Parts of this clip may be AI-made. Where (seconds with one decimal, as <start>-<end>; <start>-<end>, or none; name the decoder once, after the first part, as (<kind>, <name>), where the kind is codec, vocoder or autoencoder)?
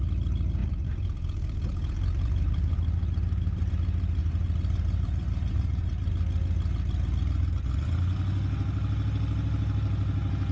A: 0.6-3.7 (vocoder, BigVGAN v2); 4.2-6.1